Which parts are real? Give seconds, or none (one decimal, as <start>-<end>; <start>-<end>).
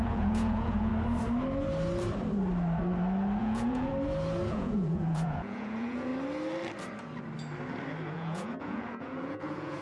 0.9-3.4; 3.9-4.5; 6.1-8.1